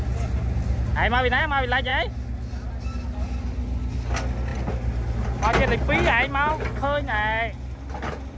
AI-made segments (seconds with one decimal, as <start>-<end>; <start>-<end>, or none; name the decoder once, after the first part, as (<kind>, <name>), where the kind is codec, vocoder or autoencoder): none